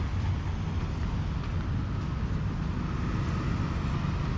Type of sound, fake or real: real